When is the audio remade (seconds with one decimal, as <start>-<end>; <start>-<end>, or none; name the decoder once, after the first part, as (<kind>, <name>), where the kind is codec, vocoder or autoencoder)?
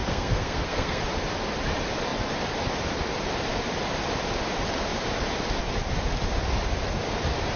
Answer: 0.0-1.0 (codec, SNAC)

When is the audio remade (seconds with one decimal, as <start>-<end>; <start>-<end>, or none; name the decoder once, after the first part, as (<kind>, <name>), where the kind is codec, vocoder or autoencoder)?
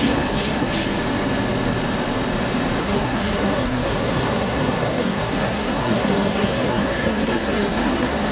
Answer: 0.0-0.7 (codec, SNAC); 2.8-8.3